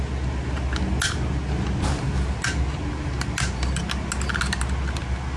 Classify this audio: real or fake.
real